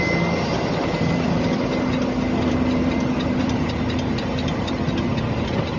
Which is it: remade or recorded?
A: recorded